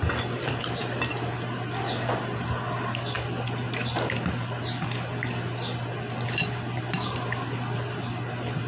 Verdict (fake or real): fake